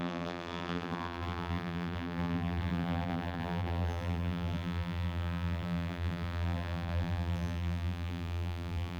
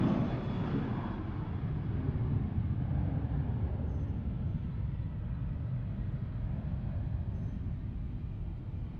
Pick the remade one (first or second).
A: first